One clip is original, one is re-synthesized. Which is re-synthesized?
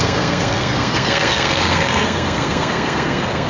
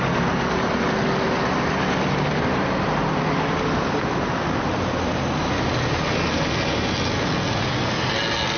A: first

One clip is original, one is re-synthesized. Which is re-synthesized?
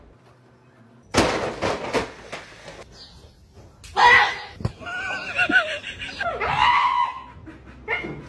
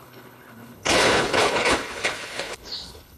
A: second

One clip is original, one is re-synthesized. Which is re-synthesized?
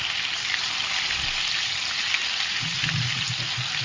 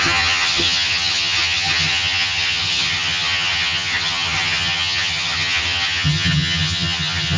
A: second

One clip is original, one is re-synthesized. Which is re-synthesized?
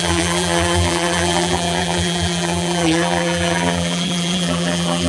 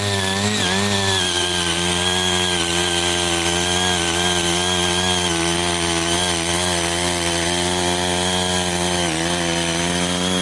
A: first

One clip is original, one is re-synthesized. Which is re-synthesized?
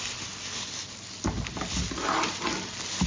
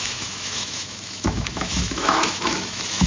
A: second